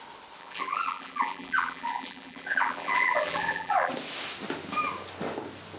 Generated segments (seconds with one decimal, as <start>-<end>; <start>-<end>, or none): 0.4-3.9